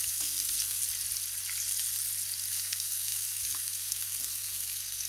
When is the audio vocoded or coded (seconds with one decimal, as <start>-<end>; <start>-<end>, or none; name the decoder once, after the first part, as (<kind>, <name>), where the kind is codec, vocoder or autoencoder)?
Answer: 0.0-0.8 (codec, SNAC); 2.5-5.1